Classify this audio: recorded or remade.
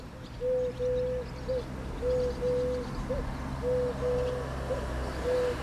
recorded